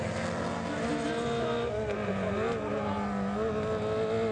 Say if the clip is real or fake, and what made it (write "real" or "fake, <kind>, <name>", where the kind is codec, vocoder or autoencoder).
real